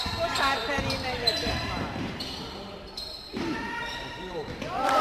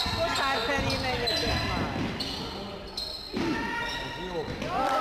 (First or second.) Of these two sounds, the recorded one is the second